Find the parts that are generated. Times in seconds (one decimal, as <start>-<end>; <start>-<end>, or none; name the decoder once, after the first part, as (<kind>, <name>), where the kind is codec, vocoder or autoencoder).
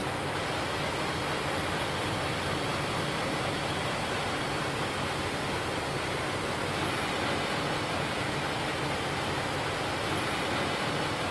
none